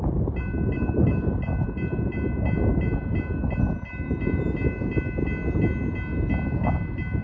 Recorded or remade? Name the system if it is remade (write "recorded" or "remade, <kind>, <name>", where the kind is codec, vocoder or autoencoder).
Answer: recorded